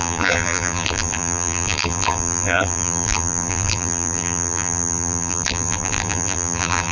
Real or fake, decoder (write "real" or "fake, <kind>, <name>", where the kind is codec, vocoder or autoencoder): fake, vocoder, BigVGAN v2